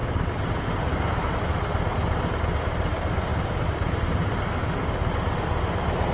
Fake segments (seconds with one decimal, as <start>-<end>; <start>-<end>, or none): none